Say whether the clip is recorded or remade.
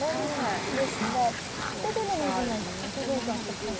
recorded